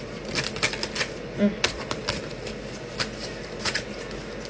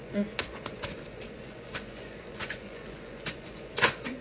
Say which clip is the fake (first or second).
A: second